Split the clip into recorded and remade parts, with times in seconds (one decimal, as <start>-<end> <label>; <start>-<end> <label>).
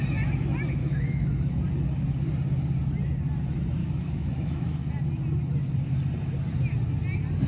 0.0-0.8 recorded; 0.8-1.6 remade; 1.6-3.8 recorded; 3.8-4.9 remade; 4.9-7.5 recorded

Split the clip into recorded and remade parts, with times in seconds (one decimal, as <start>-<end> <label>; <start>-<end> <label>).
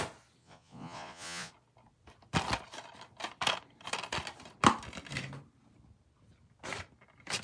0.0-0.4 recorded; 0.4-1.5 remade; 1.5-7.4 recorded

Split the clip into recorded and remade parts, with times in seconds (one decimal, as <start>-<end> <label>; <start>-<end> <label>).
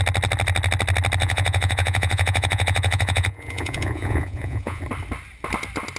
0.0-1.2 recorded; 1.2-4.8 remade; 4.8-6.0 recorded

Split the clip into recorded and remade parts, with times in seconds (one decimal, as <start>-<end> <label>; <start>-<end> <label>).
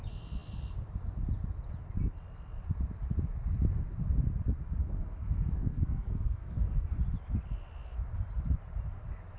0.0-4.8 recorded; 4.8-7.0 remade; 7.0-9.4 recorded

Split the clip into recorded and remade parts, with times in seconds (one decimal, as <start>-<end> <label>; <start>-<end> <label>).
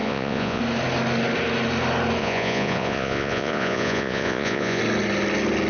0.0-0.6 remade; 0.6-2.2 recorded; 2.2-4.8 remade; 4.8-5.7 recorded